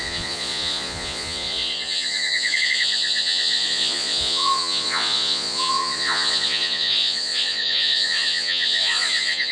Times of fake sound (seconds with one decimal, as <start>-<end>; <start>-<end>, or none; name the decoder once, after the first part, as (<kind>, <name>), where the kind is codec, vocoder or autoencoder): 0.0-9.5 (vocoder, Vocos)